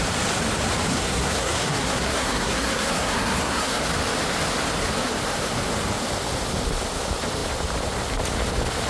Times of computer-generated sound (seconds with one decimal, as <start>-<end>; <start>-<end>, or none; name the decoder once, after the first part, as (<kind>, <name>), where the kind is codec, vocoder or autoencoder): 0.9-3.8 (codec, SNAC)